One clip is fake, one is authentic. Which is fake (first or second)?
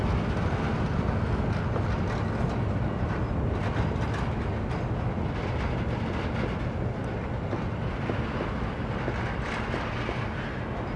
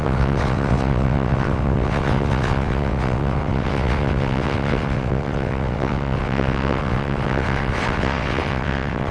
second